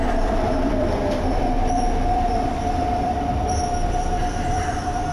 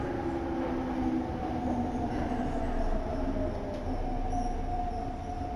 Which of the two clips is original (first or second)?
second